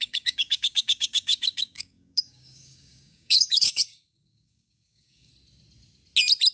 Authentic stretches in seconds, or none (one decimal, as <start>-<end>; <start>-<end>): 5.3-6.5